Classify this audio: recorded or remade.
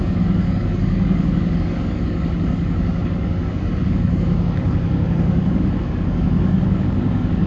remade